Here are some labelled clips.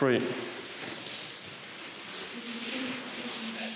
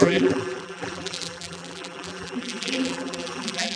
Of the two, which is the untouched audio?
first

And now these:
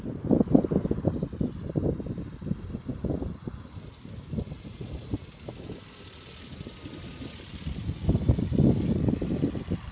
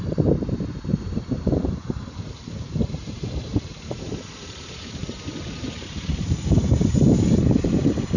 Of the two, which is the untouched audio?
first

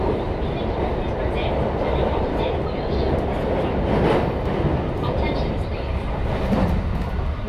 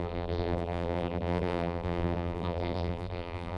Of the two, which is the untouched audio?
first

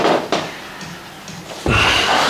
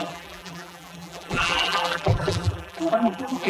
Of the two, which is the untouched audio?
first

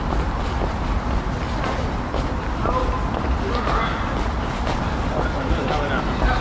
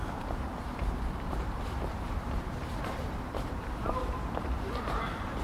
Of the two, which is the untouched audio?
first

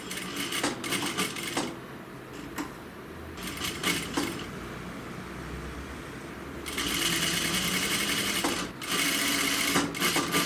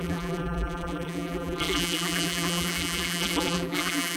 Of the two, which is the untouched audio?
first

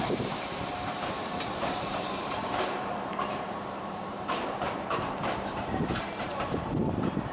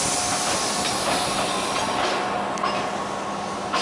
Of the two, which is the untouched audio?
second